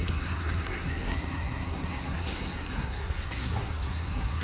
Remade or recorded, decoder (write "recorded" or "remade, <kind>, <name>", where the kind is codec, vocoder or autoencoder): remade, codec, SNAC